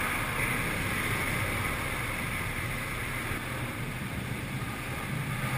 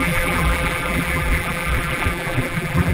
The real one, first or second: first